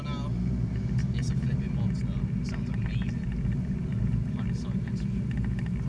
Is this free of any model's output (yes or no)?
yes